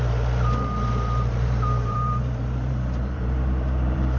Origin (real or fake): fake